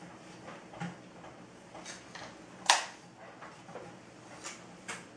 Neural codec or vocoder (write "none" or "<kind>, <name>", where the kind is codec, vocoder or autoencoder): none